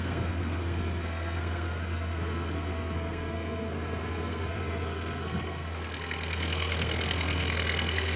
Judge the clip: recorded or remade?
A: remade